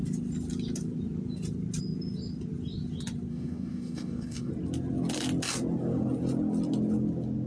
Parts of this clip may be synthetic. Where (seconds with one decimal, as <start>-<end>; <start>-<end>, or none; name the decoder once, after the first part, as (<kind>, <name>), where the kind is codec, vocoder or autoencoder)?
3.3-4.5 (codec, DAC)